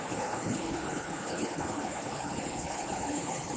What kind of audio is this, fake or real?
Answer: fake